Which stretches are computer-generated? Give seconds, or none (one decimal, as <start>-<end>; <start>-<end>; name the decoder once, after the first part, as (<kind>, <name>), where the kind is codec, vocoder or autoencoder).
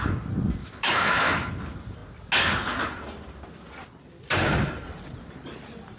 0.6-1.5 (autoencoder, DAC-VAE)